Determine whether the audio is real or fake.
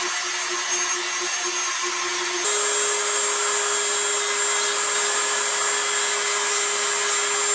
real